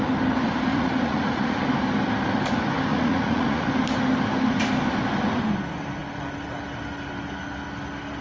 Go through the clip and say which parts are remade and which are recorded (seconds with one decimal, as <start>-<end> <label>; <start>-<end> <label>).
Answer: 0.0-0.7 recorded; 0.7-1.6 remade; 1.6-2.9 recorded; 2.9-3.7 remade; 3.7-8.2 recorded